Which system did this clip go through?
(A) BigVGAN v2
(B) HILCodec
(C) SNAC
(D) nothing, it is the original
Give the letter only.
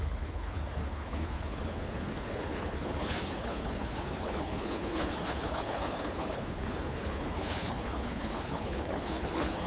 B